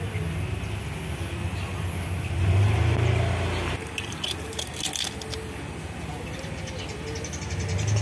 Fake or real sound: real